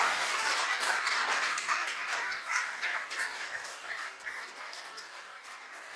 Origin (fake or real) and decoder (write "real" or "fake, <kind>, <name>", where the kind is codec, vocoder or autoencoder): fake, codec, DAC